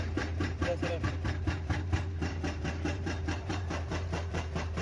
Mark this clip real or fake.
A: fake